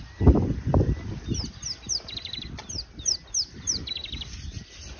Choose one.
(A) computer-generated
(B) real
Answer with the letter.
B